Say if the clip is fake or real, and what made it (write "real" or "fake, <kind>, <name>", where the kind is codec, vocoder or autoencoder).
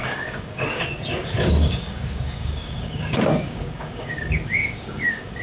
fake, codec, DAC